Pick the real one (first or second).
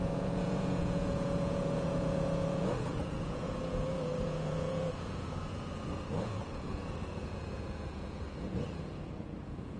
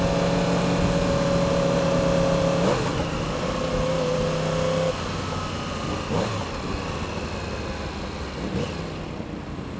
second